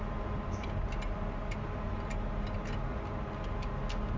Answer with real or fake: real